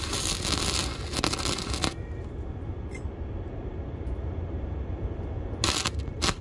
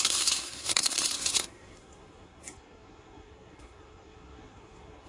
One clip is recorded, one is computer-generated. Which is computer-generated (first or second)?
second